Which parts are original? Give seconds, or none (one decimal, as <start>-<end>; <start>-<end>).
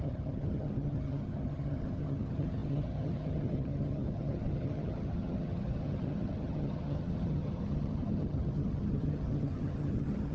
none